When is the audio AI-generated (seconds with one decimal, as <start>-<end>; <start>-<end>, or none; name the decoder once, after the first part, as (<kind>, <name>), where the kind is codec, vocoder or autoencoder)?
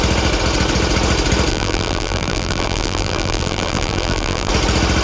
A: 1.5-4.5 (vocoder, BigVGAN v2)